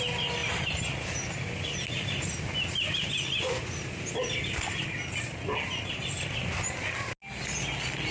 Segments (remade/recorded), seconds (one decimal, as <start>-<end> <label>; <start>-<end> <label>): 0.0-8.1 recorded